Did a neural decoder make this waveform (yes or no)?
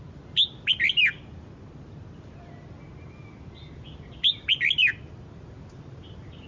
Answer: no